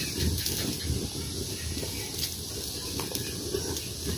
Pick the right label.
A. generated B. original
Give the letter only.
B